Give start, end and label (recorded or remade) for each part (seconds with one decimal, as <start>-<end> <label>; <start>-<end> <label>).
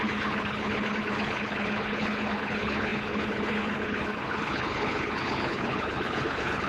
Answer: 0.0-6.7 remade